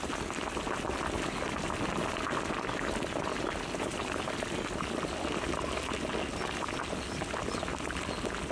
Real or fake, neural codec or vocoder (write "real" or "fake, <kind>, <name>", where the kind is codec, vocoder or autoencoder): real